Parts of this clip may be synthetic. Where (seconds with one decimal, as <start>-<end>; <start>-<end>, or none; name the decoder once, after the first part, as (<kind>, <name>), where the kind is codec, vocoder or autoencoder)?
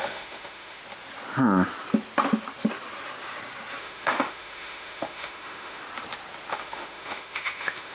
0.0-0.8 (autoencoder, DAC-VAE); 3.8-5.8; 6.5-7.9